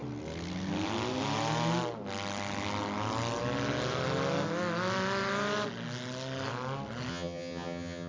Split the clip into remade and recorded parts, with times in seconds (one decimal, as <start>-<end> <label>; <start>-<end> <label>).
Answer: 0.0-7.1 recorded; 7.1-8.1 remade